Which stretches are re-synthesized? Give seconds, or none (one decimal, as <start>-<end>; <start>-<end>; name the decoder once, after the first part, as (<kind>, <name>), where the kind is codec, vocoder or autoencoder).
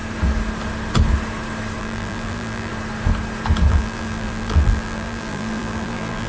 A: 1.8-2.7 (vocoder, BigVGAN v2); 3.7-6.3